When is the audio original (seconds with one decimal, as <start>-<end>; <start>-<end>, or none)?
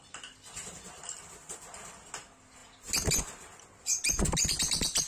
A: 0.0-5.1